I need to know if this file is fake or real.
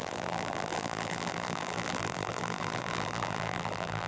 fake